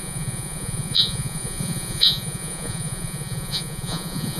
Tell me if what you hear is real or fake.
fake